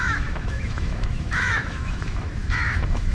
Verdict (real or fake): fake